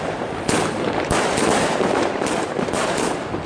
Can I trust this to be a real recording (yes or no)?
no